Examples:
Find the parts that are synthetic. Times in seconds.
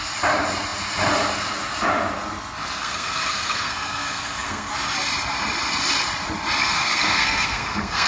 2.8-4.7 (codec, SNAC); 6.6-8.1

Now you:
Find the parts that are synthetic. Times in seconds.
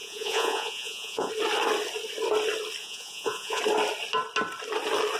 0.0-1.3 (vocoder, Vocos); 2.8-3.6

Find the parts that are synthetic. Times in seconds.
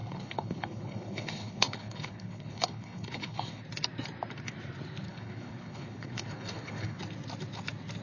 0.0-3.6 (codec, HILCodec); 5.1-7.0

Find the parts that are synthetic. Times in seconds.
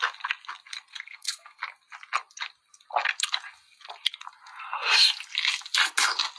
0.9-1.6 (codec, SNAC)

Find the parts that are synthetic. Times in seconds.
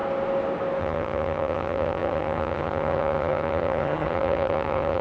0.8-5.0 (vocoder, HiFi-GAN)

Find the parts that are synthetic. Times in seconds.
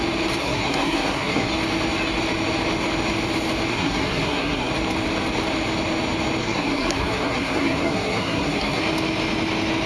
0.4-1.5 (codec, SNAC); 3.7-4.7; 6.4-8.8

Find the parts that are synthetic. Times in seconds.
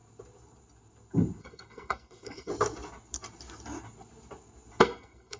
1.4-2.5 (codec, SNAC); 4.8-5.4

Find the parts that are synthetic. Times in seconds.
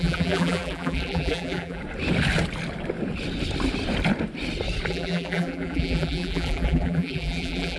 0.0-1.8 (vocoder, BigVGAN v2); 4.9-7.8